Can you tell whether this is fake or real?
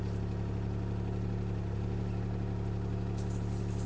real